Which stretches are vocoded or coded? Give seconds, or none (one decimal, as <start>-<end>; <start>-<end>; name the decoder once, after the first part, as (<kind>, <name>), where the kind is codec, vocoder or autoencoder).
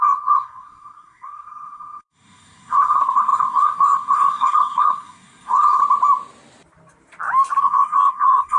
0.0-5.8 (codec, SNAC); 7.6-8.6